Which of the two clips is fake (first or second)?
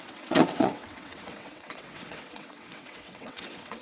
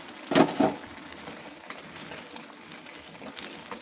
first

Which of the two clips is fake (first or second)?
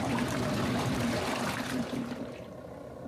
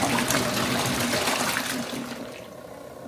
first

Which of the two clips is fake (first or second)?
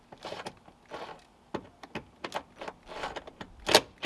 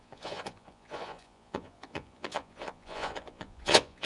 second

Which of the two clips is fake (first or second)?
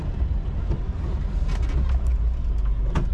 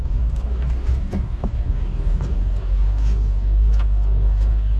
second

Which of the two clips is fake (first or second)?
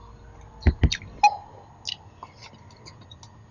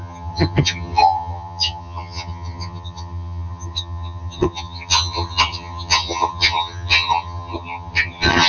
second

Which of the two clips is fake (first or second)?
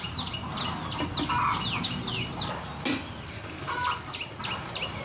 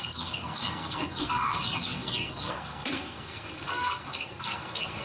second